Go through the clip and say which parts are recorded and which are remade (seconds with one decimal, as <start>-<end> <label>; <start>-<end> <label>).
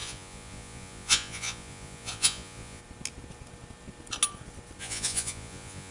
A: 0.0-2.8 remade; 2.8-4.8 recorded; 4.8-5.9 remade